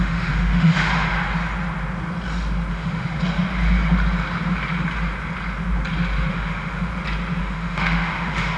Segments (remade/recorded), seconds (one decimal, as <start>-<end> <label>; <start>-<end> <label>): 0.0-0.9 remade; 0.9-2.7 recorded; 2.7-3.1 remade; 3.1-6.3 recorded; 6.3-6.9 remade; 6.9-7.4 recorded; 7.4-8.6 remade